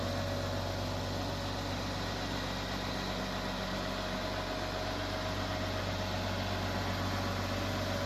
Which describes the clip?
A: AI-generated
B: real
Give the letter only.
B